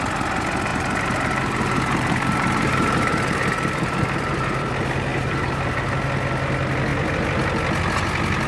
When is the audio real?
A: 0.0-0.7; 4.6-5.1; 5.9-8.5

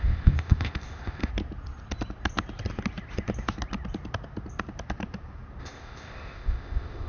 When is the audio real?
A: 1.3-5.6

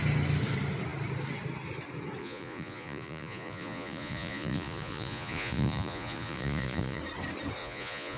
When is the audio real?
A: 0.0-2.2; 7.0-7.6